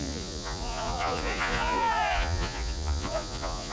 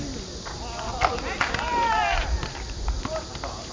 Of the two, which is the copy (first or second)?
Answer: first